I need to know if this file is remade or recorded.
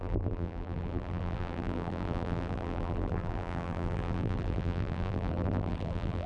remade